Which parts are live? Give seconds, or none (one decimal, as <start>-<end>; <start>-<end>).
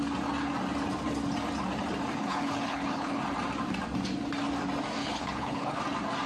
0.0-2.2; 3.2-5.0; 5.8-6.3